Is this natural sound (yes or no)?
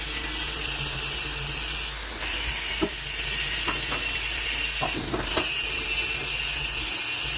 yes